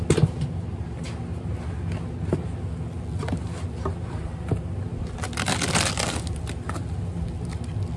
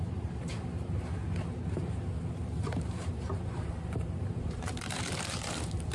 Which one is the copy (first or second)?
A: second